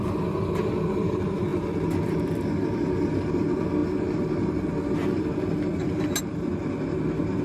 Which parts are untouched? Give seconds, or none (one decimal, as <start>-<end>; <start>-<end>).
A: 0.0-7.4